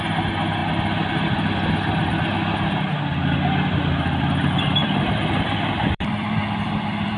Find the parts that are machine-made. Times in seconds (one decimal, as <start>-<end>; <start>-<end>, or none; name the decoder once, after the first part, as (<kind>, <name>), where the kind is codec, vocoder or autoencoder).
4.8-7.2 (vocoder, BigVGAN v2)